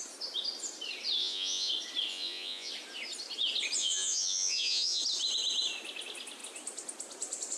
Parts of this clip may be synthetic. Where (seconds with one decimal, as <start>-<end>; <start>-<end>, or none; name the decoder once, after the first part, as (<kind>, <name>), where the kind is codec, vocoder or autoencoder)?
1.2-1.7 (vocoder, Vocos); 2.1-2.7; 3.8-5.0